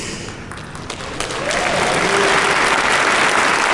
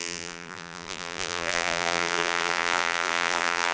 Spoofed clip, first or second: second